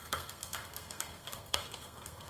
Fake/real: fake